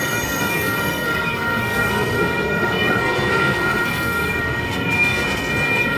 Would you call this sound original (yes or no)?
no